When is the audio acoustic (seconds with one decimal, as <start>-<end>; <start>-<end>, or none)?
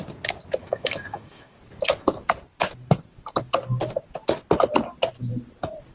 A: 0.0-0.6; 1.6-5.9